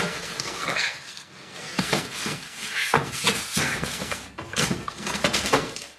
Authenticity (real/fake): fake